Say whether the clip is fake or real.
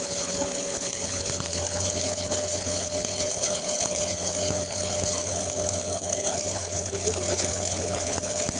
fake